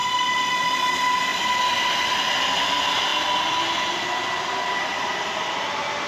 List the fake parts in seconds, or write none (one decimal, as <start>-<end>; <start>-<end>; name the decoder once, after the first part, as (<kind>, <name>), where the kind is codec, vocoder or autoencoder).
0.0-0.5 (vocoder, BigVGAN v2); 1.3-2.2